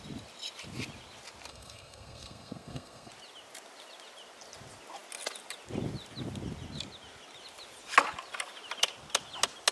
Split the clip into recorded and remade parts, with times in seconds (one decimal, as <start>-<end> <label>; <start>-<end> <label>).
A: 0.0-1.5 recorded; 1.5-3.1 remade; 3.1-9.7 recorded